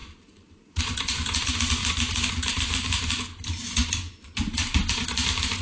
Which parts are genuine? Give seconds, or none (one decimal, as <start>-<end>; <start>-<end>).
none